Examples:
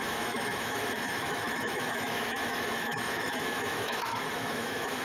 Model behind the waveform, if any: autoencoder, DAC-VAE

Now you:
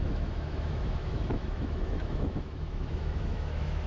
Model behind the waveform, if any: autoencoder, DAC-VAE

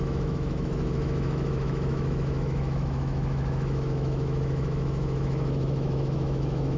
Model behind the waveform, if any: autoencoder, DAC-VAE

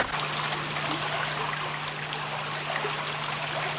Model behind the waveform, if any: none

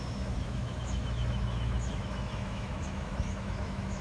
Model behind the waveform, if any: autoencoder, DAC-VAE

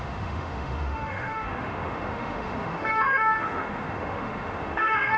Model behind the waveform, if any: autoencoder, DAC-VAE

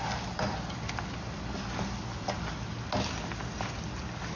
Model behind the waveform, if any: none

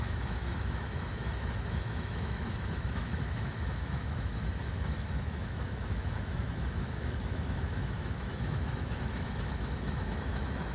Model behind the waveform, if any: autoencoder, DAC-VAE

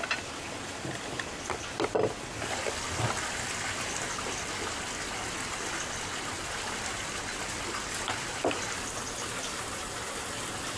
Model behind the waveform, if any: none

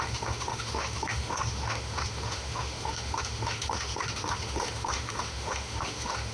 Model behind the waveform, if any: autoencoder, DAC-VAE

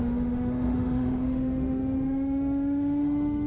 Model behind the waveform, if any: autoencoder, DAC-VAE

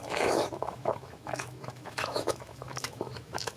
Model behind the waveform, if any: autoencoder, DAC-VAE